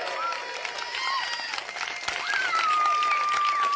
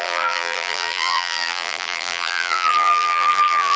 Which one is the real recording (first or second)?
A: first